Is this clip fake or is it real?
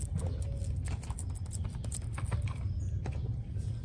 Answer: real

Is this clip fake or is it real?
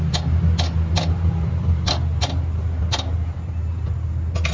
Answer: real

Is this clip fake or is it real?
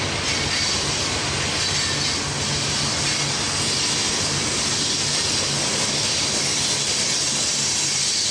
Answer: real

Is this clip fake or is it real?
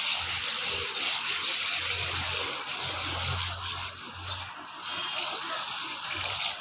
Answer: real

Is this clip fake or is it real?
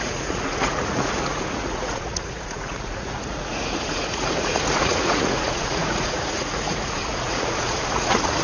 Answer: fake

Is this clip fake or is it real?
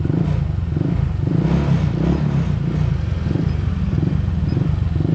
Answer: real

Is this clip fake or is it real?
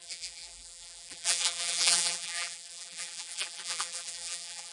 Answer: fake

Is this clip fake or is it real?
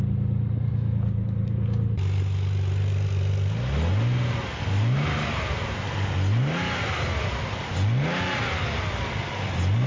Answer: real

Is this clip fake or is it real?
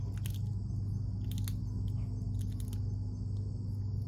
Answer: real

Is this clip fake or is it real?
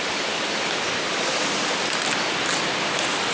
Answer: real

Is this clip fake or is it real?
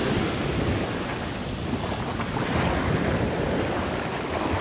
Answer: real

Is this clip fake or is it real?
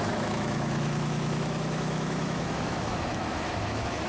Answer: fake